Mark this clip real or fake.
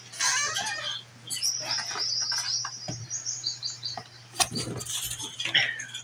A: real